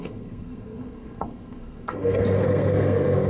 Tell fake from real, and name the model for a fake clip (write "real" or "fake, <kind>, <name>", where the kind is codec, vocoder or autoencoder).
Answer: fake, codec, SNAC